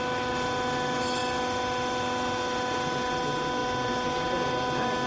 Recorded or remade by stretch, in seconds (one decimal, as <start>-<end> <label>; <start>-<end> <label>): 0.0-5.1 recorded